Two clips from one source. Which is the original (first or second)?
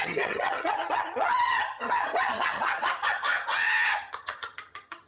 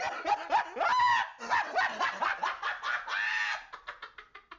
second